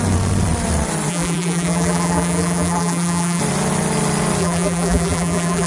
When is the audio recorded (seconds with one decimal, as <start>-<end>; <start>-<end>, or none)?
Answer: 0.0-1.1; 3.4-4.4